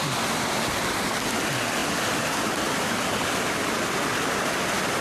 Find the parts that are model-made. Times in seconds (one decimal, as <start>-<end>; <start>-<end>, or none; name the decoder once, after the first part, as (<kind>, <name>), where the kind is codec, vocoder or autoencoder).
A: none